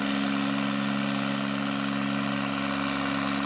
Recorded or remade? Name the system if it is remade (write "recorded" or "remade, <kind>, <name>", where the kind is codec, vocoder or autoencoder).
recorded